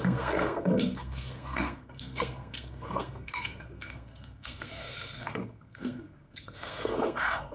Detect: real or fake fake